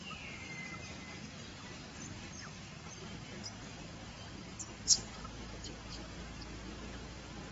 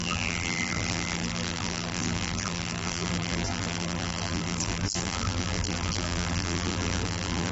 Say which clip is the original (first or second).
first